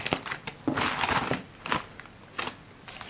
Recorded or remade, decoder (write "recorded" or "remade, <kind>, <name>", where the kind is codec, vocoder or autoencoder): remade, vocoder, BigVGAN v2